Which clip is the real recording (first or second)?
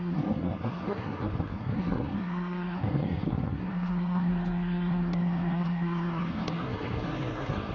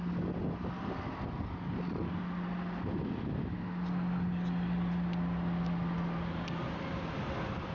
second